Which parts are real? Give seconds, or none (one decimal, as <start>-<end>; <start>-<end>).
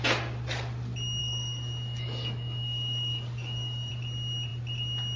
0.0-1.2; 3.9-5.2